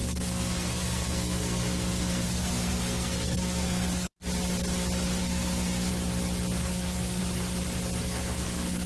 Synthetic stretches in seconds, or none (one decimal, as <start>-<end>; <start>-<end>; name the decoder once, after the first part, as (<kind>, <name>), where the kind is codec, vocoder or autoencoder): 0.0-4.2 (codec, SNAC); 5.2-5.9; 6.6-7.2; 8.0-8.9